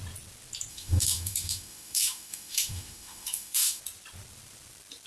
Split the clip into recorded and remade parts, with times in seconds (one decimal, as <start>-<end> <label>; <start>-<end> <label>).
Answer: 0.0-0.7 recorded; 0.7-3.8 remade; 3.8-5.1 recorded